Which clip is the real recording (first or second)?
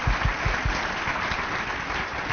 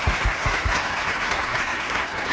first